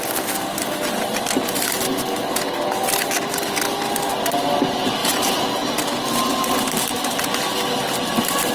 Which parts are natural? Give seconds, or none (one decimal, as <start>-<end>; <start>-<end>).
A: 0.0-5.0; 5.8-8.5